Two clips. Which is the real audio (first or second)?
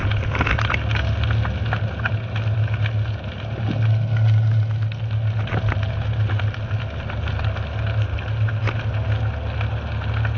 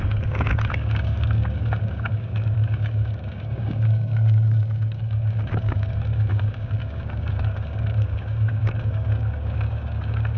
first